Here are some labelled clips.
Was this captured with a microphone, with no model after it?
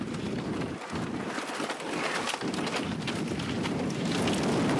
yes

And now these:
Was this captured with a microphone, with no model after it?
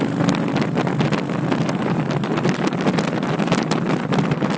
yes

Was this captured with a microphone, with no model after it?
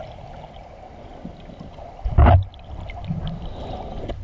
yes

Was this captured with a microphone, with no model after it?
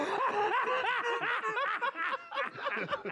yes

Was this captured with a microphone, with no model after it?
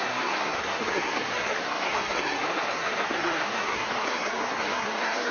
no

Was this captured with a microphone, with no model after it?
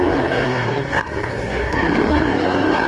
no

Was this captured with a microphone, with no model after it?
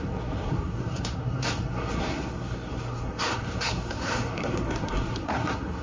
no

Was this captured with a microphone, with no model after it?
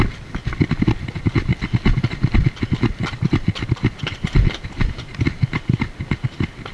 yes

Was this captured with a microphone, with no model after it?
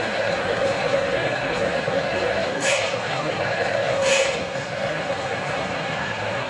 no